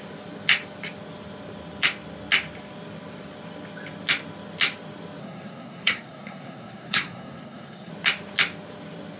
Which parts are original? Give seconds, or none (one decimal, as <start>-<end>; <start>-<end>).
0.0-5.2; 7.9-9.2